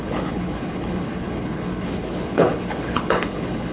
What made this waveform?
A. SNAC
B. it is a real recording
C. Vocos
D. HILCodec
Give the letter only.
D